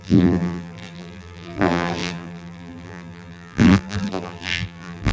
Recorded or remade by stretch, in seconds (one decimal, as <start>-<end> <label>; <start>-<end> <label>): 0.0-5.1 remade